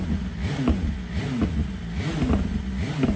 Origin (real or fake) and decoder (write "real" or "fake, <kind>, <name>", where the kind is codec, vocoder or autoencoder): real